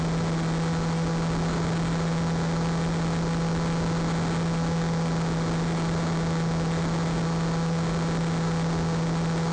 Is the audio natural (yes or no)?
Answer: yes